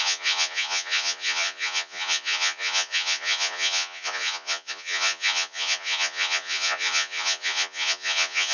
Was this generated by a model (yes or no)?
yes